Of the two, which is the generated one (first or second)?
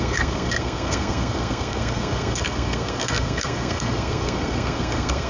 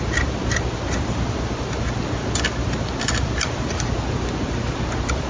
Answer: first